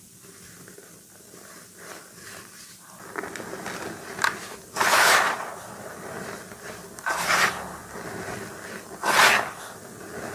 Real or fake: real